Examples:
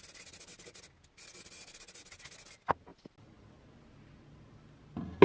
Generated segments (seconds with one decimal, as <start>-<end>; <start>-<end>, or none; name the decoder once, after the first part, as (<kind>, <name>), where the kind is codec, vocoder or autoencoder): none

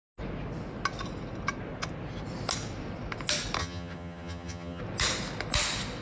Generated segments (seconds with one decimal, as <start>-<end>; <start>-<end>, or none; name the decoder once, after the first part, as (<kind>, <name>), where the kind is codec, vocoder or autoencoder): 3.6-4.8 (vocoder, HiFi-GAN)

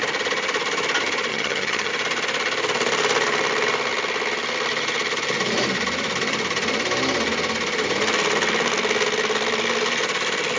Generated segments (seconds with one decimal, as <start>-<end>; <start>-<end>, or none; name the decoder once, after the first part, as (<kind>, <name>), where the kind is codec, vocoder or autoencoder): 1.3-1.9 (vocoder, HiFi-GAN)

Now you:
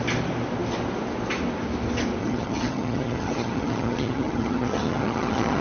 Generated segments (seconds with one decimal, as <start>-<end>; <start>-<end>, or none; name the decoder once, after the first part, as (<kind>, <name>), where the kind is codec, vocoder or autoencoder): 2.2-5.6 (vocoder, HiFi-GAN)

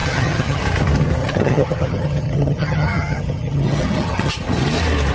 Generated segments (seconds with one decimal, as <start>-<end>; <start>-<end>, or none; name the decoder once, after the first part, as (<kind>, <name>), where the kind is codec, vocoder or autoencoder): 0.0-0.6 (vocoder, HiFi-GAN); 1.2-4.3

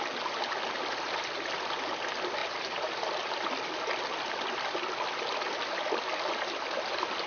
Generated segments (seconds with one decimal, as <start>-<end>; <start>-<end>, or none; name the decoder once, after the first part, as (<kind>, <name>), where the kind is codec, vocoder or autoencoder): none

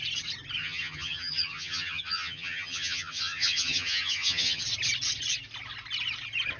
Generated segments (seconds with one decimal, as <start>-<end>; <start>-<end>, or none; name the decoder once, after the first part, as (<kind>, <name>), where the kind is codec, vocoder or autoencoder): 0.6-4.6 (vocoder, HiFi-GAN)